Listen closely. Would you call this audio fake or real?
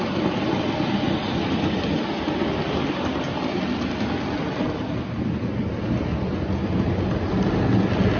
real